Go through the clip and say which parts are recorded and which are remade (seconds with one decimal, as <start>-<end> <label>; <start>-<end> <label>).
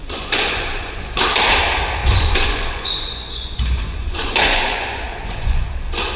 0.0-1.2 remade; 1.2-2.0 recorded; 2.0-5.6 remade; 5.6-6.2 recorded